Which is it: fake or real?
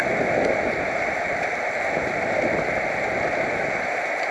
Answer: real